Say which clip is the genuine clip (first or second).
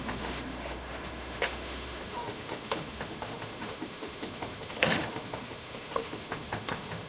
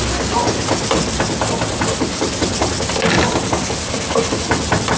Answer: second